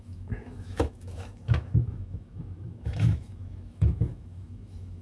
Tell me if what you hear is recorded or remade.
remade